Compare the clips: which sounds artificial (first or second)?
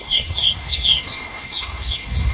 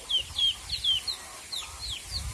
first